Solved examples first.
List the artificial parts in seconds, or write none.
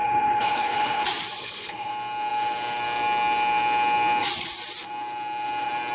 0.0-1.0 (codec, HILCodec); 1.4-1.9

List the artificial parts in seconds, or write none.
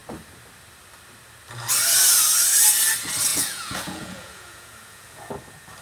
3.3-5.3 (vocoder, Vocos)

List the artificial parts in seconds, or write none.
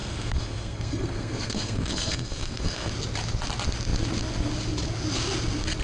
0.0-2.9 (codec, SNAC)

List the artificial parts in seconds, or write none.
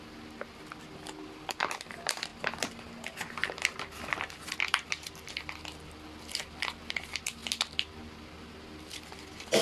0.0-2.3 (vocoder, BigVGAN v2); 3.5-9.6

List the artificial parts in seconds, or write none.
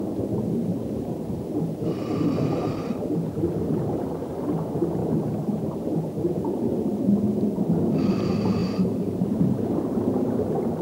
0.7-3.4 (vocoder, BigVGAN v2); 5.0-6.7; 8.6-9.7